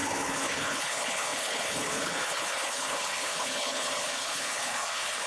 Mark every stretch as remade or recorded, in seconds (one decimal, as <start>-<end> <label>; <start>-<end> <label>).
0.0-5.3 remade